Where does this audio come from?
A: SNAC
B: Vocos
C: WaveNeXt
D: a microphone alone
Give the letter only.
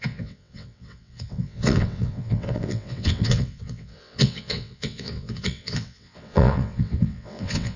C